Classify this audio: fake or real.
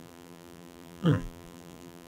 fake